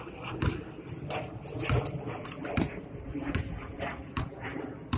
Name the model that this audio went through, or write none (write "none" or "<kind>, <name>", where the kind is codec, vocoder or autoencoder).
vocoder, BigVGAN v2